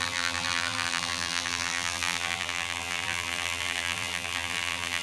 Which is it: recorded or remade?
remade